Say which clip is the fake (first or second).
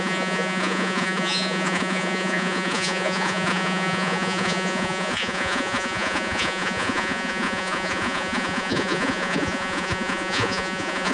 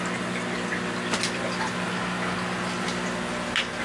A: first